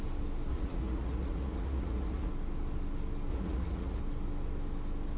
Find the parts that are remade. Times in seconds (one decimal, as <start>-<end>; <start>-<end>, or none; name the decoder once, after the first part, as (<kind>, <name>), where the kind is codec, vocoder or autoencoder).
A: 0.5-2.3 (vocoder, Vocos); 3.3-4.0